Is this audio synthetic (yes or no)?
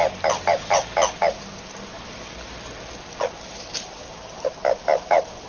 no